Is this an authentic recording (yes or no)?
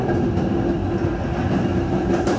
yes